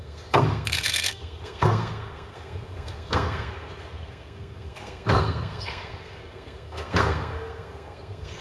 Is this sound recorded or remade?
remade